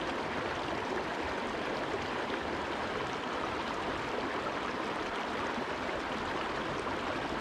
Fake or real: real